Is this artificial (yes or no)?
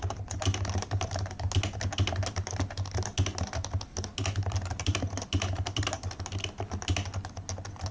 no